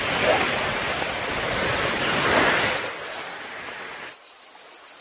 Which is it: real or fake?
real